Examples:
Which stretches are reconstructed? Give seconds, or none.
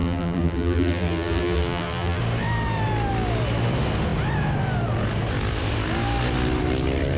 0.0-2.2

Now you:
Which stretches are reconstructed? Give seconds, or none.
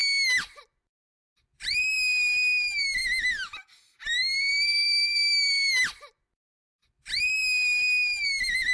0.6-3.0; 4.0-8.7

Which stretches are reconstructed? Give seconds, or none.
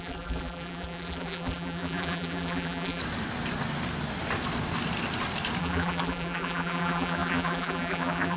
0.0-3.0; 5.6-8.4